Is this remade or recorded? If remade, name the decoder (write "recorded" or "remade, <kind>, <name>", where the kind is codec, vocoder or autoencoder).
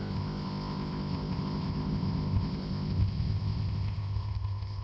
remade, codec, ZipCodec